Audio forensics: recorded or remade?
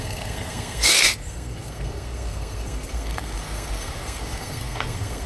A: remade